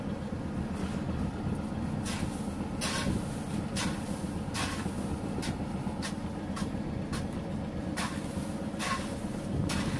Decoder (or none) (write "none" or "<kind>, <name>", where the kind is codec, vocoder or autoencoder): none